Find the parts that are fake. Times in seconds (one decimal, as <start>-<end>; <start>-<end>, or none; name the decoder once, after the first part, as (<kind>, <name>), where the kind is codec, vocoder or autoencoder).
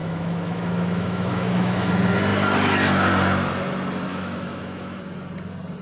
0.0-1.9 (autoencoder, DAC-VAE); 4.1-5.0